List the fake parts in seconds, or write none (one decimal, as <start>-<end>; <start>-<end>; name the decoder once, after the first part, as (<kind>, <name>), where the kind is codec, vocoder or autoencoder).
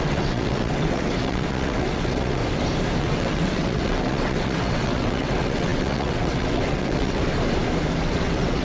0.0-2.4 (vocoder, WaveNeXt); 3.0-7.3; 8.0-8.6